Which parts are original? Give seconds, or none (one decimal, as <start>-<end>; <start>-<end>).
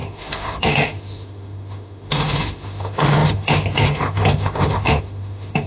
none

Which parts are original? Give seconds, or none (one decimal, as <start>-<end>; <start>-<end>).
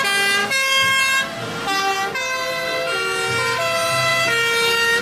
0.0-0.4; 1.0-5.0